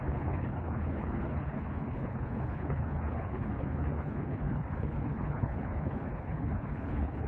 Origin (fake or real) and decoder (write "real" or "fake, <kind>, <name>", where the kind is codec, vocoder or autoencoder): fake, codec, HILCodec